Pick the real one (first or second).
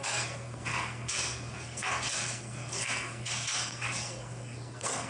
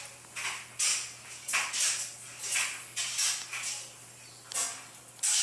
second